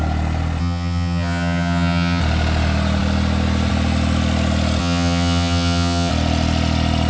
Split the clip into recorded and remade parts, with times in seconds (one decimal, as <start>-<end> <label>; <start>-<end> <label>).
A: 0.0-0.6 recorded; 0.6-2.2 remade; 2.2-4.8 recorded; 4.8-6.1 remade; 6.1-7.1 recorded